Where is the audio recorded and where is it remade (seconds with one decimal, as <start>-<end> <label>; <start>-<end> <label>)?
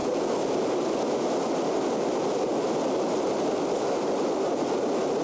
0.0-5.2 recorded